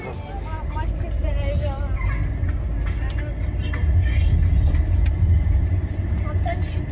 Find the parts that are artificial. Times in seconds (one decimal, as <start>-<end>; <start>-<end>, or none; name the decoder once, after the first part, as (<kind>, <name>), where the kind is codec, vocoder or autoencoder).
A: none